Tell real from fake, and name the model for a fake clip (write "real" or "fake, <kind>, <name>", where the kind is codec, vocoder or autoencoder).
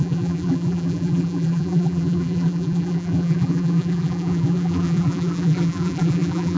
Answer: fake, vocoder, BigVGAN v2